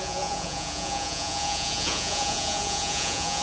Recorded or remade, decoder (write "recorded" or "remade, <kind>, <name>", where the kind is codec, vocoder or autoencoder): remade, vocoder, Vocos